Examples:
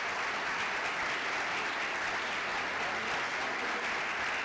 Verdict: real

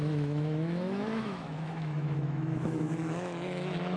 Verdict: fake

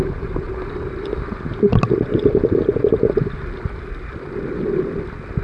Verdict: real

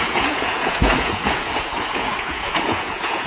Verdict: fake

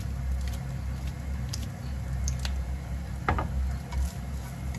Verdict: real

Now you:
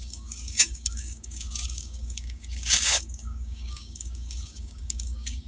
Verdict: fake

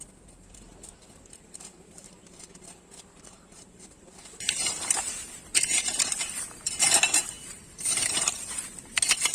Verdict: fake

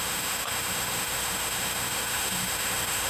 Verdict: fake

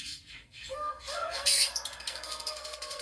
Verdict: fake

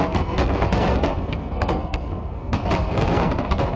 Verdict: fake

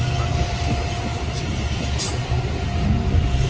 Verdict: real